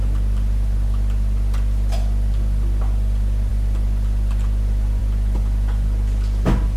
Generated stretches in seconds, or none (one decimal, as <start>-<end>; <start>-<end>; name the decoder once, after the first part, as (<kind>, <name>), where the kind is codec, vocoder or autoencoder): none